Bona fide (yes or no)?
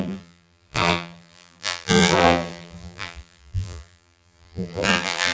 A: no